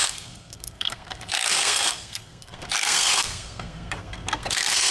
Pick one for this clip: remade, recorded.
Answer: remade